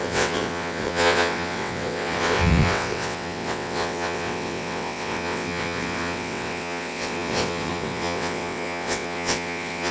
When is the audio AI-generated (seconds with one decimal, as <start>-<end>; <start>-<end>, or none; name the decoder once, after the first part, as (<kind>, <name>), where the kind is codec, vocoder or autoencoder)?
0.0-9.9 (vocoder, WaveNeXt)